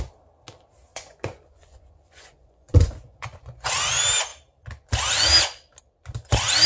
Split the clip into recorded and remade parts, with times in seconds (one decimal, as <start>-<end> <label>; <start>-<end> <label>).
0.0-0.9 recorded; 0.9-3.7 remade; 3.7-6.7 recorded